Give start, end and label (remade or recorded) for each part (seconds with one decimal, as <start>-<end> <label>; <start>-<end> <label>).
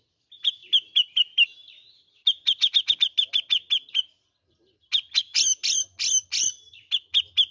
0.0-7.5 recorded